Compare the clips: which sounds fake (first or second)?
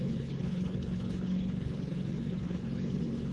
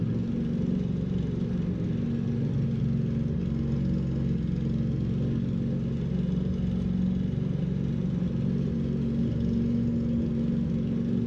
first